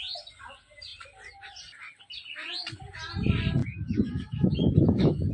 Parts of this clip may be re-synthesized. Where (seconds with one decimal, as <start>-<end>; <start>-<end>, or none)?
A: 3.6-5.3